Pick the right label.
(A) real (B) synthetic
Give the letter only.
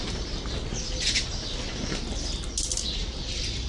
A